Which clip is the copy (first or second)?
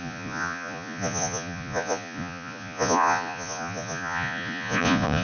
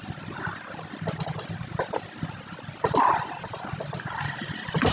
first